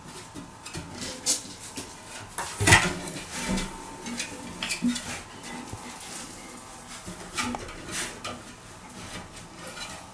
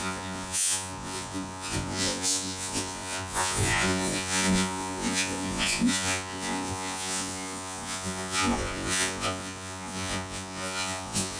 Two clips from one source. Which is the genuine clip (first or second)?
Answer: first